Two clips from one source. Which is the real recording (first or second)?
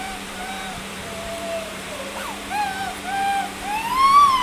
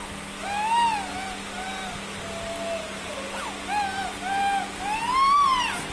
second